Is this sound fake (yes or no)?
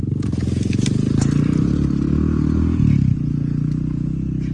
no